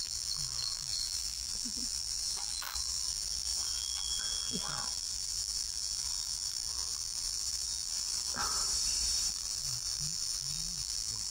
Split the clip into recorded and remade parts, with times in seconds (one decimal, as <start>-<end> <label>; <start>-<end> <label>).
0.0-8.4 remade; 8.4-9.3 recorded; 9.3-11.3 remade